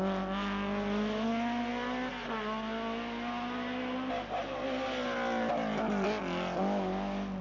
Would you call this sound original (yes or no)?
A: yes